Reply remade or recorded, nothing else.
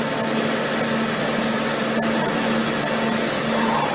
recorded